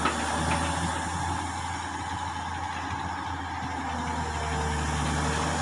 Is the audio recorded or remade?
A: recorded